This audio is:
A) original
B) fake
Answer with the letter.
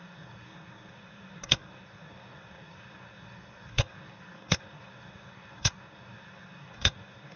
B